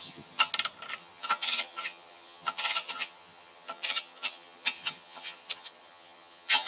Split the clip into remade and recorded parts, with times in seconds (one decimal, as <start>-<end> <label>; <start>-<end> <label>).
0.0-0.5 remade; 0.5-1.0 recorded; 1.0-6.7 remade